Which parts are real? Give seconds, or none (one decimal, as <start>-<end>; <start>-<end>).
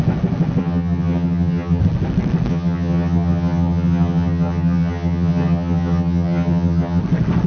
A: 0.0-0.6; 1.8-2.5; 7.0-7.5